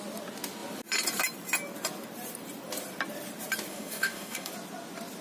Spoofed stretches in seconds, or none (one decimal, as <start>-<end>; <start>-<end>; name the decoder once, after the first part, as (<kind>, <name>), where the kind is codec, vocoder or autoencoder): 3.7-4.5 (codec, DAC)